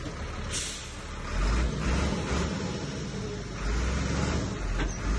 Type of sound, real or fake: real